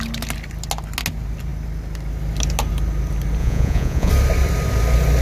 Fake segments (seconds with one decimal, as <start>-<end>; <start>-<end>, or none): 3.4-4.1